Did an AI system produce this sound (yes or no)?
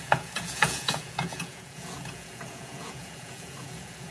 yes